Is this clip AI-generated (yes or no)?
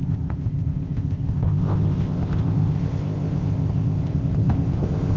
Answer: yes